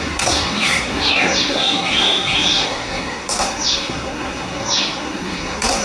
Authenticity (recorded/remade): remade